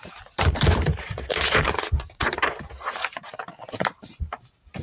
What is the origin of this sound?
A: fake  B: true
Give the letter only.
A